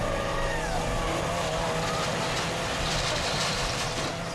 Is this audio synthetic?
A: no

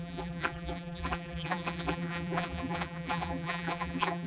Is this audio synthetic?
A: yes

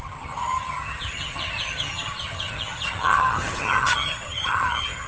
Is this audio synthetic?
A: yes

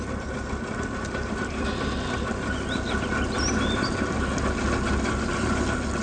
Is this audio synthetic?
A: no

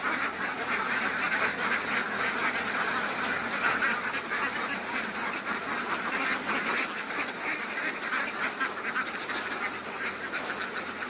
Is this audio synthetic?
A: no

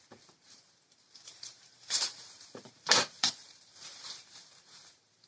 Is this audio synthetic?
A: yes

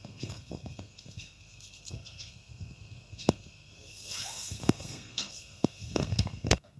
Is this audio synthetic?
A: yes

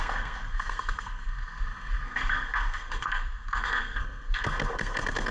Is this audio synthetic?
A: yes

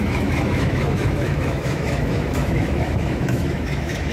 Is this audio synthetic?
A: yes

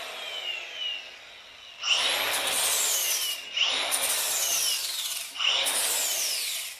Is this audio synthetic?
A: no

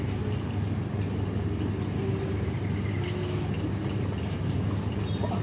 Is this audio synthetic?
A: no